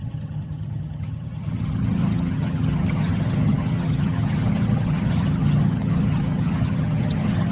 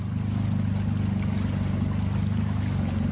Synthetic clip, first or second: first